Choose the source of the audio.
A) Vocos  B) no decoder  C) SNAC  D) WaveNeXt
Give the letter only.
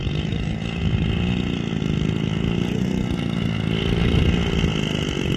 B